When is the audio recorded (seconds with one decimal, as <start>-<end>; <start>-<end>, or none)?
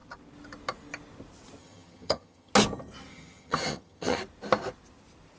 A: 0.0-1.6; 2.5-3.1; 4.2-5.4